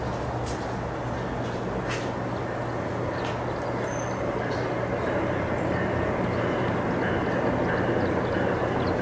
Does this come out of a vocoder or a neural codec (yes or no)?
no